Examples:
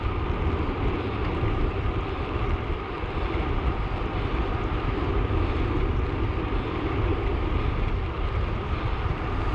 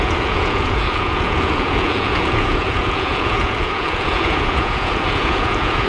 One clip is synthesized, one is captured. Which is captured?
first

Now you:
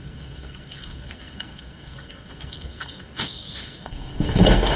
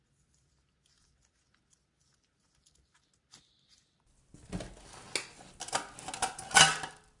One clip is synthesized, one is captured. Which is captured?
second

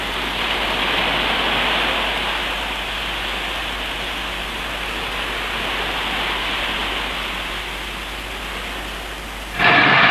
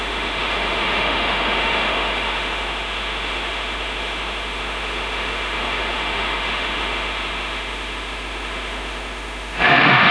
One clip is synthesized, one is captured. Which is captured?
first